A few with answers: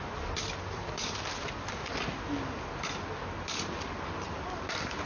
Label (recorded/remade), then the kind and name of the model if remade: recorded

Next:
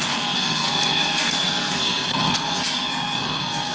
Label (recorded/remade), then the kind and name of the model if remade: remade, codec, SNAC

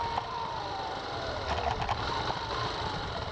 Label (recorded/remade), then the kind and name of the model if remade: recorded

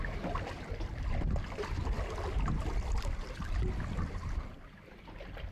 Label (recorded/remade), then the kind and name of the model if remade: recorded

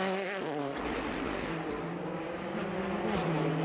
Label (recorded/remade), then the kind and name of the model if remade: recorded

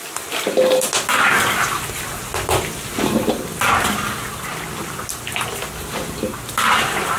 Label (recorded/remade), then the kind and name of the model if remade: recorded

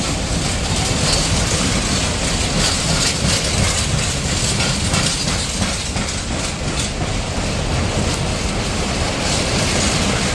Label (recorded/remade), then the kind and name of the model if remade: recorded